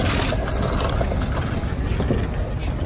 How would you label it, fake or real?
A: real